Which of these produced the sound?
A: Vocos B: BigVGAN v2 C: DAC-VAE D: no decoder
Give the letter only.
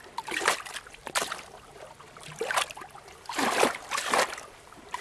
B